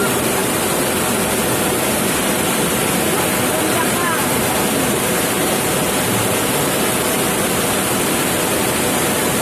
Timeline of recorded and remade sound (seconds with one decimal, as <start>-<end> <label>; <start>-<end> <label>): 0.0-9.4 recorded